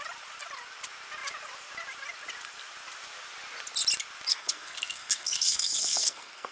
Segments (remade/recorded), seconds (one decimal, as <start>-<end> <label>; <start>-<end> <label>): 0.0-4.3 recorded; 4.3-6.5 remade